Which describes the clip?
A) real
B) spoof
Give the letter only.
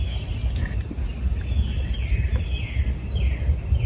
A